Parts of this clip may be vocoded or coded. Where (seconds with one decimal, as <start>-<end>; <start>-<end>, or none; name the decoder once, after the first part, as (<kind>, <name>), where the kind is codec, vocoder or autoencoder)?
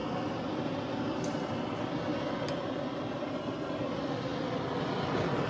none